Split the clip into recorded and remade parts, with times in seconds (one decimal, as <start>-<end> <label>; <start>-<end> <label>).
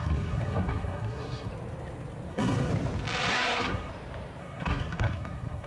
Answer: 0.0-1.5 remade; 1.5-2.3 recorded; 2.3-2.7 remade; 2.7-3.3 recorded; 3.3-3.9 remade; 3.9-4.4 recorded; 4.4-5.7 remade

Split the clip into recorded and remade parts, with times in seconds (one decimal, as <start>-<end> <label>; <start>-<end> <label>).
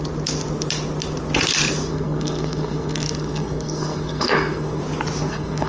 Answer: 0.0-1.9 recorded; 1.9-4.8 remade; 4.8-5.2 recorded; 5.2-5.7 remade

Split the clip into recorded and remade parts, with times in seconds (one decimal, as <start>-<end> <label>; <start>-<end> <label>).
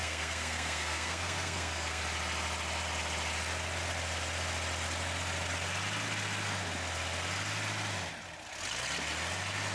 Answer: 0.0-2.0 remade; 2.0-9.7 recorded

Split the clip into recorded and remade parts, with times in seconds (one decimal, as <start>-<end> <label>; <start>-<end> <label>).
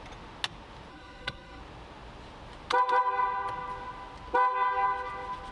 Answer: 0.0-0.9 recorded; 0.9-1.6 remade; 1.6-5.5 recorded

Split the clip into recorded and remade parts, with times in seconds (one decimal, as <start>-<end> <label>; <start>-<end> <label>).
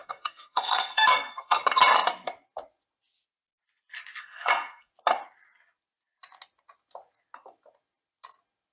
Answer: 0.0-1.6 remade; 1.6-4.2 recorded; 4.2-4.9 remade; 4.9-8.7 recorded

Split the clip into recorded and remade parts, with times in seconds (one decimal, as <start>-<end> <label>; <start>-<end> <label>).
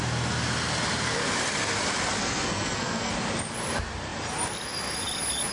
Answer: 0.0-2.2 recorded; 2.2-3.1 remade; 3.1-5.5 recorded